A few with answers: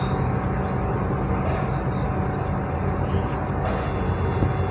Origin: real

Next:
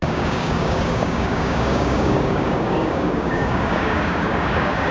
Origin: fake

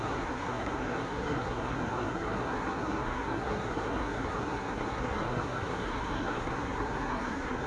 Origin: fake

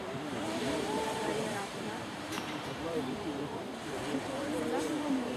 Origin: fake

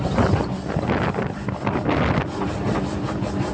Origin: real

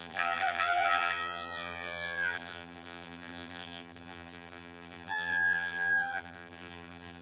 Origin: fake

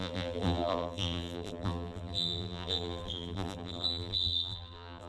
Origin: fake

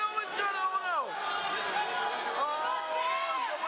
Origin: real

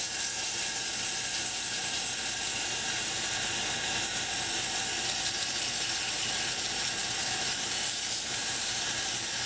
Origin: fake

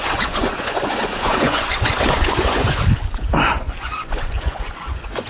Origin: fake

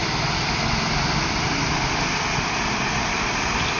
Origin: real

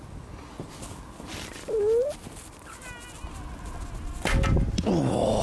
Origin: real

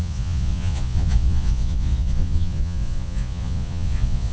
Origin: fake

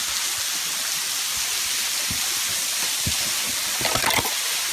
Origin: real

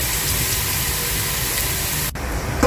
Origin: real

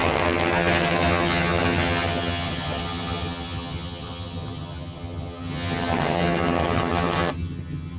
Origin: fake